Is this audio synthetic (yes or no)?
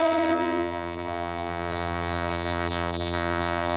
yes